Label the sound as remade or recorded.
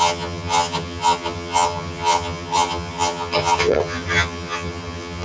remade